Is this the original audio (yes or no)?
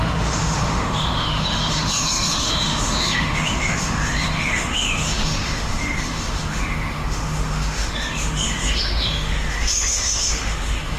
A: no